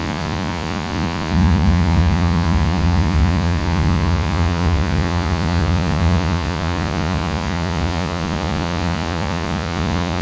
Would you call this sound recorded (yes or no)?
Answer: no